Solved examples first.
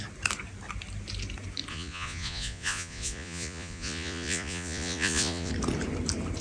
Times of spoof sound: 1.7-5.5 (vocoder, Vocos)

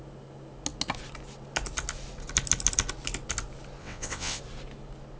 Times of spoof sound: 3.8-4.4 (vocoder, WaveNeXt)

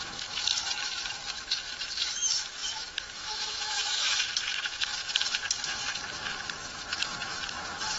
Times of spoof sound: 0.0-8.0 (autoencoder, DAC-VAE)

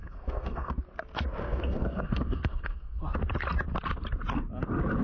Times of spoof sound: 0.0-0.7 (codec, SNAC); 1.4-3.0

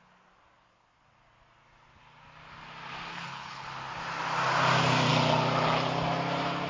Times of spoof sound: 3.1-3.7 (codec, HILCodec)

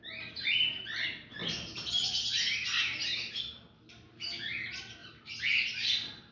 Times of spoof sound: none

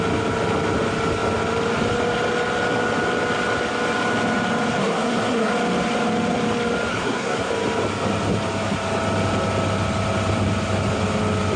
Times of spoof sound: 4.8-5.5 (codec, SNAC); 6.9-7.5

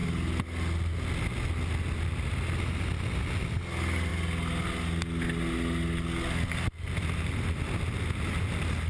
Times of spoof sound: none